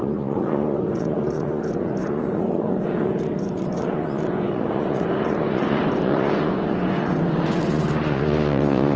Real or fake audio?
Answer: fake